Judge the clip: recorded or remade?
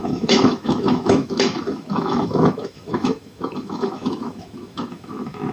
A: remade